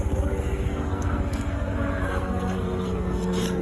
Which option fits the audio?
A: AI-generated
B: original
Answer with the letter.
A